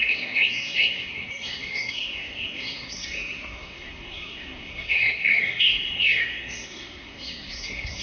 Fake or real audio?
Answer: fake